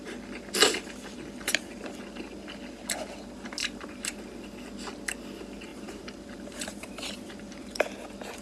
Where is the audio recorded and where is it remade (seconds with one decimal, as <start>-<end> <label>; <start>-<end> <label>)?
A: 0.0-3.6 recorded; 3.6-4.2 remade; 4.2-5.7 recorded; 5.7-7.7 remade; 7.7-8.4 recorded